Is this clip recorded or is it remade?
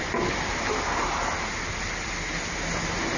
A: recorded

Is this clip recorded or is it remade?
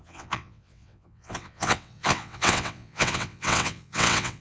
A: remade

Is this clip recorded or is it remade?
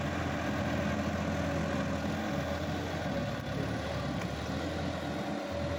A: recorded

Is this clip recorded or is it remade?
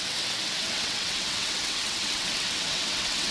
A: remade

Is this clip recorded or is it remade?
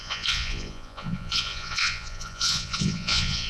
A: remade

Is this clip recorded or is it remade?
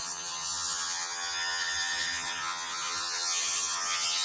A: remade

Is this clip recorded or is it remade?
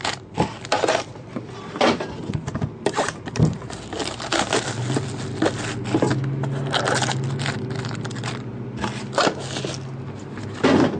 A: recorded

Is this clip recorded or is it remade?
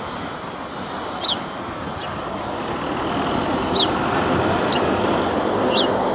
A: recorded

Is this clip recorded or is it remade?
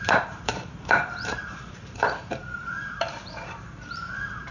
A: remade